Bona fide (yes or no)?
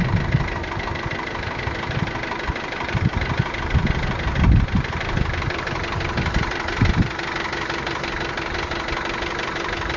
no